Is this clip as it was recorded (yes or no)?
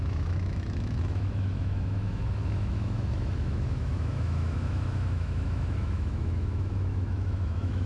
no